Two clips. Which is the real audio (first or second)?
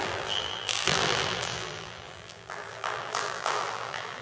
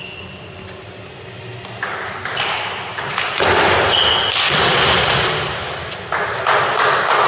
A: second